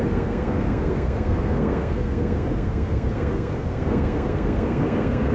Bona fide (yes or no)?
no